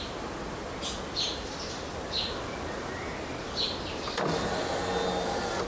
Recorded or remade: recorded